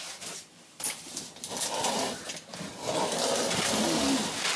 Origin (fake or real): fake